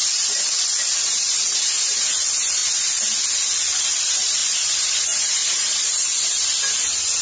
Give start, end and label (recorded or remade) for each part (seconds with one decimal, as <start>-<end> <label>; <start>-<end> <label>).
0.0-2.6 remade; 2.6-3.8 recorded; 3.8-4.4 remade; 4.4-4.9 recorded; 4.9-7.2 remade